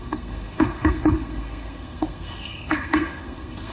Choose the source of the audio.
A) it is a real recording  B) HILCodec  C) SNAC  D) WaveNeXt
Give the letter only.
C